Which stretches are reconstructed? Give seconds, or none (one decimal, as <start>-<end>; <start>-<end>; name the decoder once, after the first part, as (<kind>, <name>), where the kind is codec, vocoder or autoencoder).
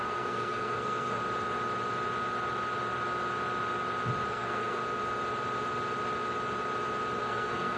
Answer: 0.0-1.2 (codec, SNAC); 4.3-4.8; 7.2-7.8